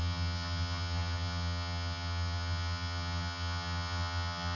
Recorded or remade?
remade